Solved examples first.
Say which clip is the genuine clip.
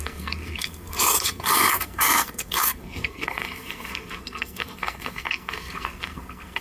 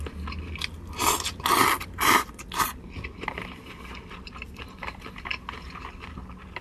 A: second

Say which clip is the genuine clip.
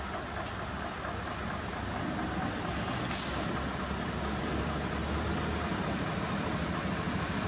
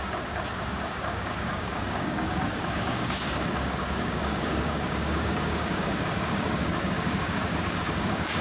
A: first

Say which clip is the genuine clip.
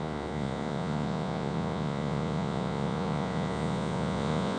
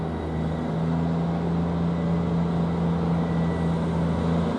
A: second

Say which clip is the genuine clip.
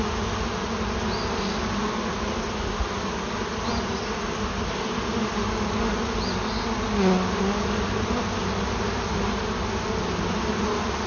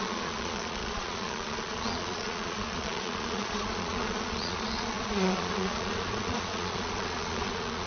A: first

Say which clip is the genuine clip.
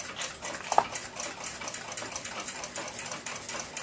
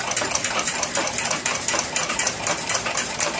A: first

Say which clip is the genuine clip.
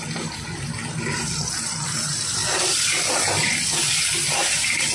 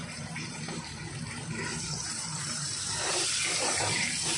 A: first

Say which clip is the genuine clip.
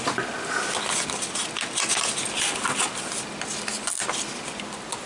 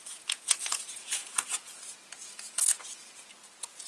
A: first